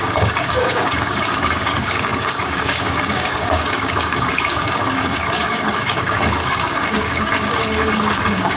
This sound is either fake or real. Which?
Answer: fake